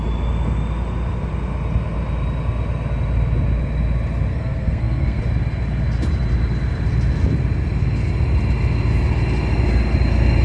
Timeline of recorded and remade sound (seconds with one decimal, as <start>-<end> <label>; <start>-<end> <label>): 0.0-4.3 recorded; 4.3-5.2 remade; 5.2-10.4 recorded